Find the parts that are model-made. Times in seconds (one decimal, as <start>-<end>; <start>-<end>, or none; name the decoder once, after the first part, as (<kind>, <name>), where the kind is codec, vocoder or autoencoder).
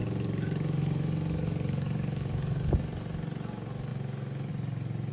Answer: 0.0-2.7 (codec, DAC)